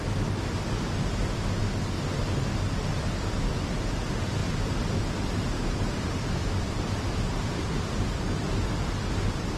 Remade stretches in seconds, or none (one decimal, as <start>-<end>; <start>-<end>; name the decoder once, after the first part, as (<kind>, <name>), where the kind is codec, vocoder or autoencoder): 4.4-7.8 (vocoder, BigVGAN v2)